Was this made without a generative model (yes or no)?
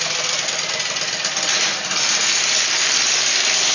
yes